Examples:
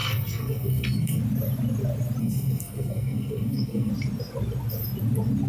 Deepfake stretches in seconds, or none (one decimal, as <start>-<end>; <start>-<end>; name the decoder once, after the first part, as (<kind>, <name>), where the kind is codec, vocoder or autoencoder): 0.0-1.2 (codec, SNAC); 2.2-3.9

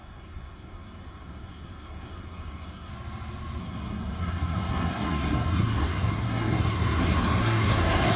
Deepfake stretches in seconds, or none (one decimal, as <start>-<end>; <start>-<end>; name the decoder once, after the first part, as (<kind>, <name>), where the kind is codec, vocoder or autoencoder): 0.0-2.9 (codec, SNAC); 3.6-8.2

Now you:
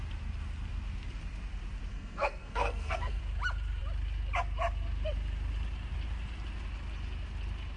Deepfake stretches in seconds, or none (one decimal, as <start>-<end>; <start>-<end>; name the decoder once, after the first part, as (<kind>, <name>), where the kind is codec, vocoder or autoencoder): 1.9-3.2 (codec, SNAC)

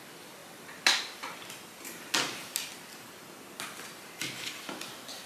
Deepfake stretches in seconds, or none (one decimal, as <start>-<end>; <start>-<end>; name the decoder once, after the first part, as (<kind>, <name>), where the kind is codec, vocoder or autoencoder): none

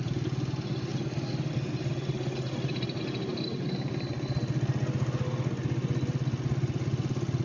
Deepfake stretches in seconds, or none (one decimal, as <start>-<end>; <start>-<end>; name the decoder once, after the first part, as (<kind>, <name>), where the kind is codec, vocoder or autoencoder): none

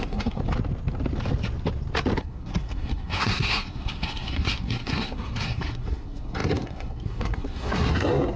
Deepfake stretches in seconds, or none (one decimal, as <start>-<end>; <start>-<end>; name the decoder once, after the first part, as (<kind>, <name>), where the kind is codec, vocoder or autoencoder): 0.0-0.4 (codec, SNAC); 2.2-8.4

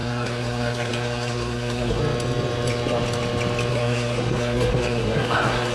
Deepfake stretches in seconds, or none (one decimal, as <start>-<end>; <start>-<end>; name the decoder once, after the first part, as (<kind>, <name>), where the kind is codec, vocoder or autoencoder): 0.0-2.0 (codec, SNAC); 3.7-5.7

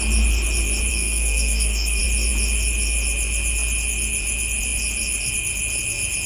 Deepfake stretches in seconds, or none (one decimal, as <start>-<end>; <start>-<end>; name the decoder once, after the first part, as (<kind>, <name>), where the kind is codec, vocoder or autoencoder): 0.9-2.0 (codec, SNAC)